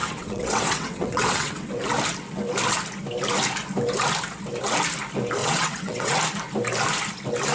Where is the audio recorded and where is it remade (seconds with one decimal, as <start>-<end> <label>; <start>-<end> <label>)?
0.0-1.8 remade; 1.8-5.4 recorded; 5.4-6.1 remade; 6.1-7.5 recorded